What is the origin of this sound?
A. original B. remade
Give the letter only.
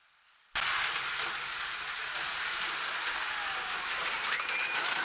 A